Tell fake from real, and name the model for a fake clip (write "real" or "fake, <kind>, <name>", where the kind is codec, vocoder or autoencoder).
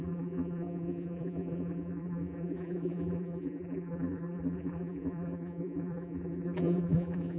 fake, vocoder, BigVGAN v2